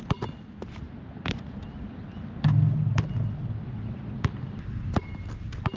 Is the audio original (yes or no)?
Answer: yes